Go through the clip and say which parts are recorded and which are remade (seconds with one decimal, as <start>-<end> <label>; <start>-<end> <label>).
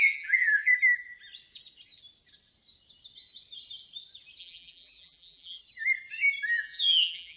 0.0-0.7 remade; 0.7-4.4 recorded; 4.4-5.6 remade; 5.6-6.6 recorded; 6.6-7.4 remade